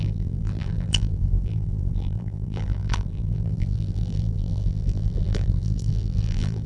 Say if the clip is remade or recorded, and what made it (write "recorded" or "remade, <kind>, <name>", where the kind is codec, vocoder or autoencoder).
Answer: remade, vocoder, BigVGAN v2